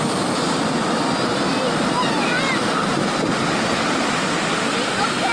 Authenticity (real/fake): real